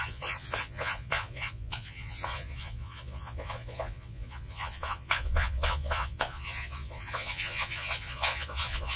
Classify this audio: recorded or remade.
remade